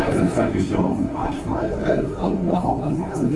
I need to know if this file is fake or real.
fake